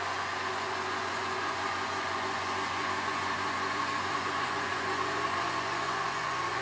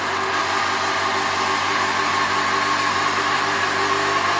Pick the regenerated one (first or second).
first